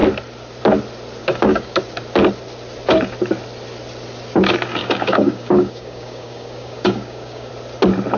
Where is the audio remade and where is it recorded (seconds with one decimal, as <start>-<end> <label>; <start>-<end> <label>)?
0.0-1.2 recorded; 1.2-1.8 remade; 1.8-4.8 recorded; 4.8-7.5 remade; 7.5-8.2 recorded